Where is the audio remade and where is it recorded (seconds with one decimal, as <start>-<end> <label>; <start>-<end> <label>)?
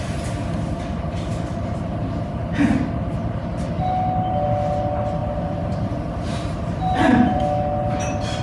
0.0-5.2 recorded; 5.2-7.4 remade; 7.4-8.4 recorded